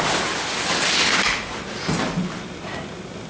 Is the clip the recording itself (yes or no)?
yes